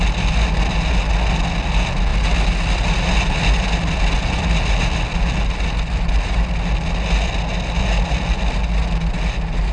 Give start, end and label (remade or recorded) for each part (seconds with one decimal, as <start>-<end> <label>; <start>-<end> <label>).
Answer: 0.0-9.7 recorded